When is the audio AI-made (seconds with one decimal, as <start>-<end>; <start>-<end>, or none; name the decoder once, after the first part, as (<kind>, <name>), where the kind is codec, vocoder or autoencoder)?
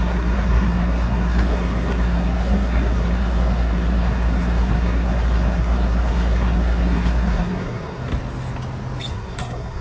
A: 0.0-8.0 (codec, SNAC); 9.1-9.8